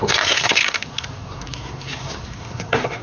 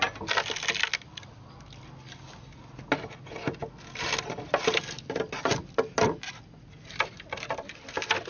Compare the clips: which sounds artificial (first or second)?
first